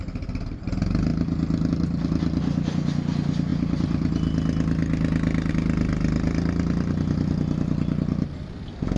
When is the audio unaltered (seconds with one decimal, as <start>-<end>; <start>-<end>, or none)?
0.0-9.0